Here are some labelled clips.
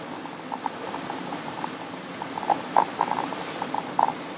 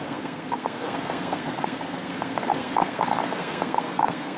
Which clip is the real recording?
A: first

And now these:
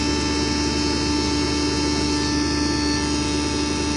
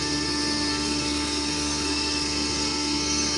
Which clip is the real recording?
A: first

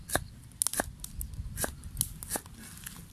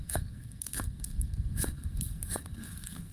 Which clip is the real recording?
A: first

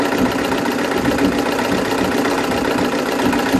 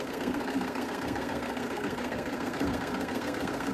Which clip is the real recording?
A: first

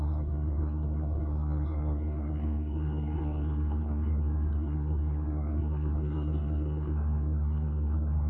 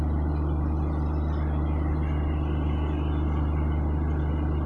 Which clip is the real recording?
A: second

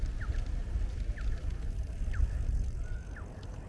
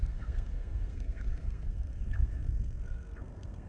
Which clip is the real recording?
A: first